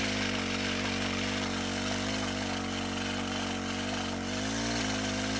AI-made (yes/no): no